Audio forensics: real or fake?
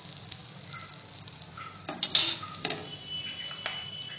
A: real